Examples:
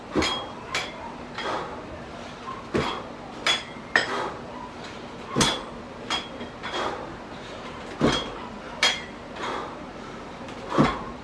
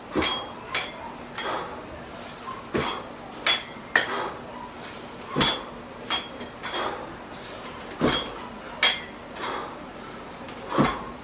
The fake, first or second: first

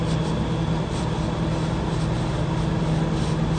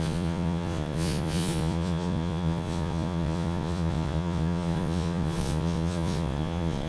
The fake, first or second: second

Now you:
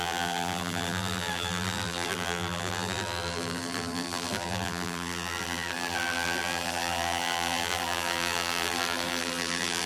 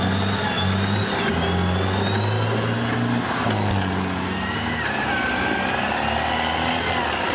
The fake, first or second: first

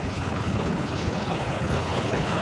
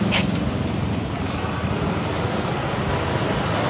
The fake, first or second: first